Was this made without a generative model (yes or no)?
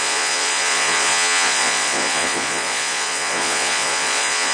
no